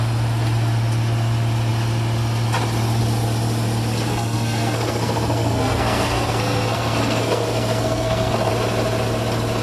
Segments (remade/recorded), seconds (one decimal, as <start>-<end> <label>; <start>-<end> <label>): 0.0-4.1 recorded; 4.1-8.5 remade; 8.5-9.6 recorded